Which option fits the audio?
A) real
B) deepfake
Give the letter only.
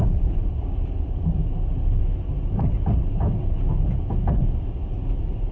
A